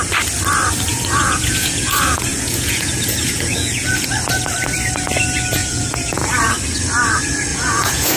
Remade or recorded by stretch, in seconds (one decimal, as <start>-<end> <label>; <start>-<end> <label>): 0.0-0.9 recorded; 0.9-4.1 remade; 4.1-5.6 recorded; 5.6-6.3 remade; 6.3-7.5 recorded; 7.5-8.2 remade